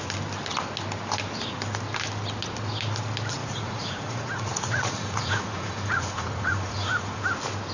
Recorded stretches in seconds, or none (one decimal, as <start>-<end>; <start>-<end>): 0.0-3.4; 7.2-7.7